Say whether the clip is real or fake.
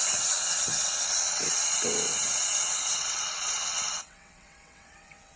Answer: fake